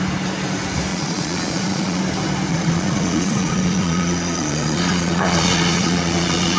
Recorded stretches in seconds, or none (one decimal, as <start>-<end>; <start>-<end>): 0.0-0.9; 2.0-2.5